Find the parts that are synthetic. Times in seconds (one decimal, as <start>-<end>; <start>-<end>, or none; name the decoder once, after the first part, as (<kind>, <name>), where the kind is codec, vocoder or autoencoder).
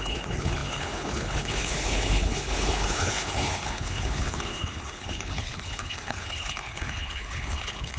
0.0-8.0 (codec, HILCodec)